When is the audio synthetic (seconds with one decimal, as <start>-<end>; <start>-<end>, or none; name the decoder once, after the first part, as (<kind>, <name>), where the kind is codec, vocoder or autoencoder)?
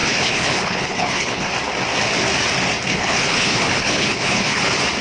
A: 0.0-1.5 (codec, HILCodec); 2.9-4.6